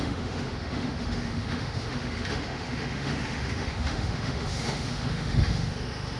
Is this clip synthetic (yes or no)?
yes